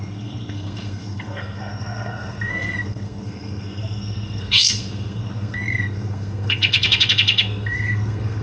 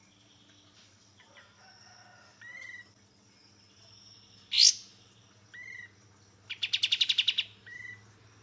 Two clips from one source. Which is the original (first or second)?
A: second